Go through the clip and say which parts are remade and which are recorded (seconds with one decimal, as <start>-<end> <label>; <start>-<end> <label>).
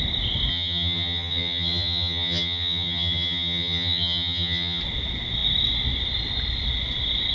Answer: 0.0-0.5 recorded; 0.5-4.8 remade; 4.8-7.3 recorded